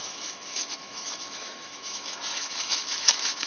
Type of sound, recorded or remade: remade